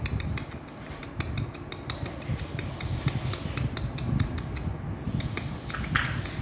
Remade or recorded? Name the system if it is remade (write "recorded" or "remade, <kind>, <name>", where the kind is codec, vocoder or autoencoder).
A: recorded